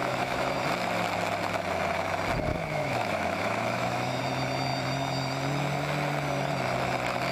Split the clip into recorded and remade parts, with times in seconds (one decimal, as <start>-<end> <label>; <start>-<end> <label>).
0.0-0.6 remade; 0.6-2.5 recorded; 2.5-4.2 remade; 4.2-7.3 recorded